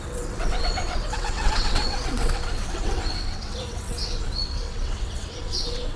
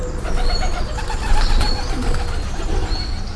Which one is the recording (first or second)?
second